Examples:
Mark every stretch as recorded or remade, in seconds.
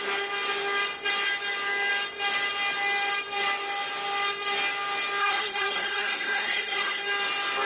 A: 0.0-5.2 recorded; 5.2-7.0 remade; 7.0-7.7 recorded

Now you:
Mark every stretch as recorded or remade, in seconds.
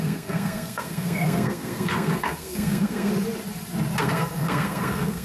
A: 0.0-3.1 remade; 3.1-4.0 recorded; 4.0-5.2 remade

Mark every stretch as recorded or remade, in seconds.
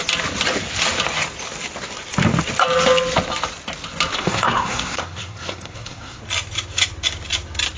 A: 0.0-4.1 recorded; 4.1-6.2 remade; 6.2-7.8 recorded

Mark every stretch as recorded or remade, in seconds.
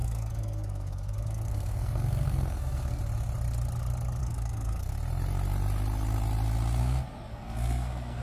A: 0.0-3.0 remade; 3.0-4.2 recorded; 4.2-4.9 remade; 4.9-6.8 recorded; 6.8-8.2 remade